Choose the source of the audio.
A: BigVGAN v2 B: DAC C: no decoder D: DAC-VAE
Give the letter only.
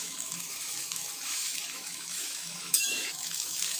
D